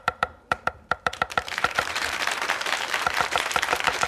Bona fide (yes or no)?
no